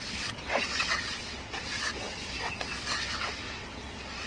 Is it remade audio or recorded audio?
remade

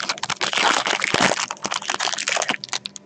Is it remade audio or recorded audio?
recorded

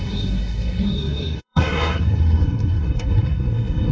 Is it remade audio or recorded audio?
remade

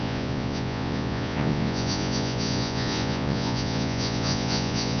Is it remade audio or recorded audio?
remade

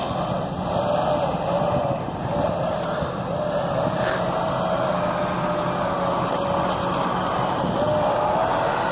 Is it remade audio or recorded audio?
recorded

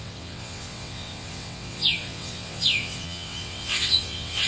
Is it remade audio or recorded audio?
remade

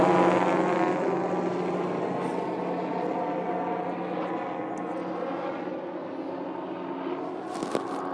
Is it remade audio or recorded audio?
recorded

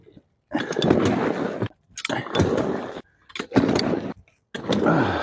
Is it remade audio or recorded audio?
recorded